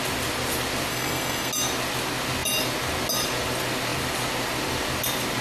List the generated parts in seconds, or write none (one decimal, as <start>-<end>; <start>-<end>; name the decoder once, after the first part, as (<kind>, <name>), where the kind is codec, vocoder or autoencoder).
0.9-1.5 (codec, SNAC)

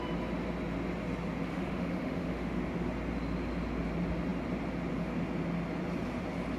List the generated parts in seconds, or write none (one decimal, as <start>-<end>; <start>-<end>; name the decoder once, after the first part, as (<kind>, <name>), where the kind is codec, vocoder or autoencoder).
1.5-2.6 (autoencoder, DAC-VAE)

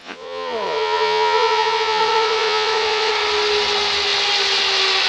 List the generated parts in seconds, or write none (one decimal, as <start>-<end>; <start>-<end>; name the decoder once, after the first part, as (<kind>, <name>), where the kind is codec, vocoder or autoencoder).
0.0-3.1 (vocoder, Vocos)